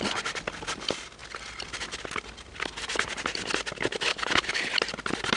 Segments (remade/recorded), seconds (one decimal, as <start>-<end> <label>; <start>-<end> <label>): 0.0-4.1 recorded; 4.1-4.7 remade; 4.7-5.4 recorded